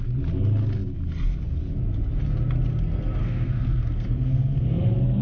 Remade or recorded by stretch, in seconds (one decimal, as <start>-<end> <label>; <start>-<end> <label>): 0.0-3.2 recorded; 3.2-4.8 remade; 4.8-5.2 recorded